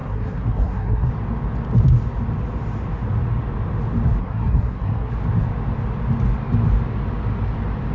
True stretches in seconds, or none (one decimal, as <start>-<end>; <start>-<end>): 1.1-4.2; 5.1-7.9